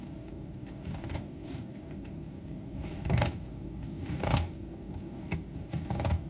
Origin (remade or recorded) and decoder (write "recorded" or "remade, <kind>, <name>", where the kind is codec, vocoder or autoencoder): remade, codec, DAC